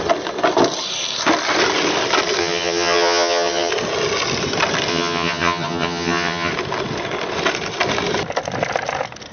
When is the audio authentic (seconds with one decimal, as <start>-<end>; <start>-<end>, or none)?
0.0-2.4; 3.7-4.9; 6.5-9.3